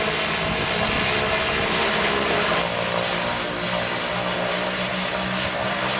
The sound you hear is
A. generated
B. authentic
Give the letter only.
B